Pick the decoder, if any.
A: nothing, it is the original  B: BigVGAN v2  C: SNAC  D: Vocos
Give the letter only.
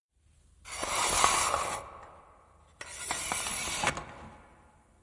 A